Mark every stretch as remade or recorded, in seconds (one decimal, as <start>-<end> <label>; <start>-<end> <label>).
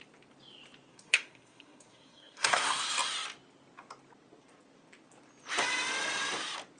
0.0-0.9 recorded; 0.9-2.8 remade; 2.8-6.8 recorded